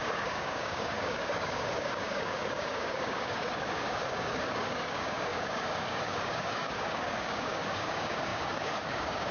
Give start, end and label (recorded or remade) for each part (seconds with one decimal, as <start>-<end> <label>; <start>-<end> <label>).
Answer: 0.0-9.3 remade